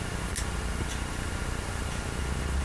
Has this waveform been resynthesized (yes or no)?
no